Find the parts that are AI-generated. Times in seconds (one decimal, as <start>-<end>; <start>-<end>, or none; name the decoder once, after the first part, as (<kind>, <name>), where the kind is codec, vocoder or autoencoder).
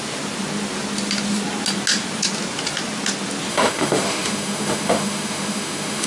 3.5-6.1 (autoencoder, DAC-VAE)